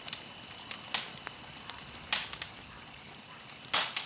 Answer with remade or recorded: recorded